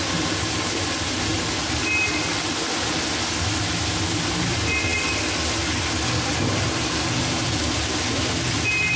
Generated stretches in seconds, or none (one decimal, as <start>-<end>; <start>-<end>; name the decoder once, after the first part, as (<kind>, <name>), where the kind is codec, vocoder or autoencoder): none

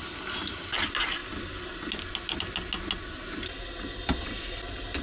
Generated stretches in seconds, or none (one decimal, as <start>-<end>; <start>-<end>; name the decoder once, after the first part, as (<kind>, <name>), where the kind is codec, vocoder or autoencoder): none

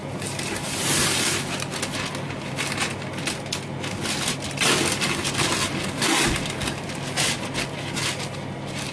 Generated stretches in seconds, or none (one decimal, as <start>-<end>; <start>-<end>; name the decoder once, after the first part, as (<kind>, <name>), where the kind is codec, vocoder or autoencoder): none

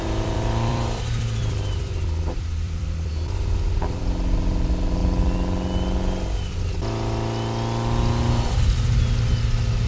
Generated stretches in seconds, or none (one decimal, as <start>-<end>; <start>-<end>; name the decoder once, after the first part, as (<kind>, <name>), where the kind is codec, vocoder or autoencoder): 0.0-3.1 (vocoder, BigVGAN v2)

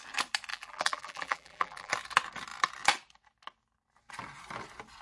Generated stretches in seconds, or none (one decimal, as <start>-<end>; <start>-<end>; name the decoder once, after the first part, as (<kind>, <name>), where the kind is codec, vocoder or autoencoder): 0.5-1.9 (vocoder, BigVGAN v2)